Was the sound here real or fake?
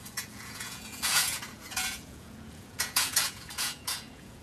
fake